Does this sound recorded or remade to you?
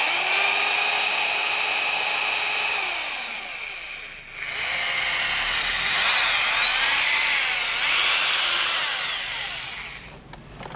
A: recorded